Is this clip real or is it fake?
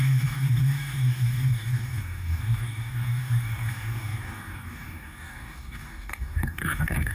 fake